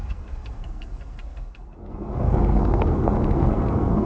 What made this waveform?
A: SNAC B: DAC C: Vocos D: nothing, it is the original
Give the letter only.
A